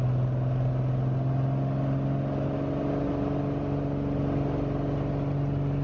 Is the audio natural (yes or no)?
yes